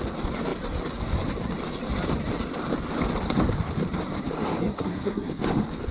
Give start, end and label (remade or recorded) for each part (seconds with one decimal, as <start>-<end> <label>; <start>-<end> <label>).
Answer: 0.0-4.6 recorded; 4.6-5.3 remade; 5.3-5.9 recorded